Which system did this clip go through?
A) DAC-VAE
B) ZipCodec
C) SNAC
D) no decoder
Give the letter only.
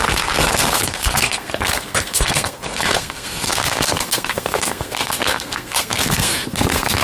C